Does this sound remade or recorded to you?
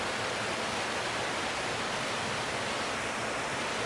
recorded